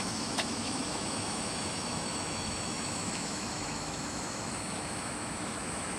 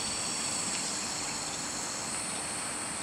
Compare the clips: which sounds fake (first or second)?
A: first